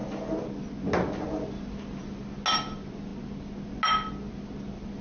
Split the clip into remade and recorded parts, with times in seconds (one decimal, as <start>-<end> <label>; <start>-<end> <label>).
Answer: 0.0-5.0 recorded